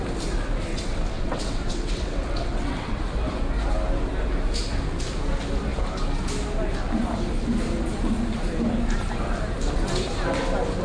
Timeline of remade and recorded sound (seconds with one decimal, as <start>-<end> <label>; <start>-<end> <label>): 0.0-0.7 recorded; 0.7-3.0 remade; 3.0-10.8 recorded